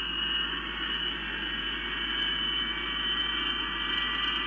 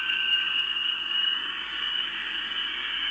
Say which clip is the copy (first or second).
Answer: second